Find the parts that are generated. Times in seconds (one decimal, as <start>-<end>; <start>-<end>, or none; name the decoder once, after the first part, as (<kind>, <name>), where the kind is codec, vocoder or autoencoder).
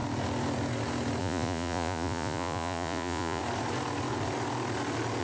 1.2-3.4 (vocoder, Vocos)